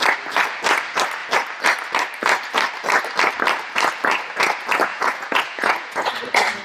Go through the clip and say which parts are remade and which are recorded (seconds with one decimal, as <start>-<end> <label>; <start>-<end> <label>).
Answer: 0.0-4.9 recorded; 4.9-6.1 remade; 6.1-6.6 recorded